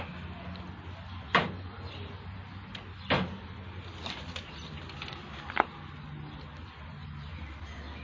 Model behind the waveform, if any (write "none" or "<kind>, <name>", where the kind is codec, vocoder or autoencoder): none